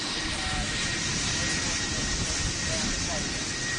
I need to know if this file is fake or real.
real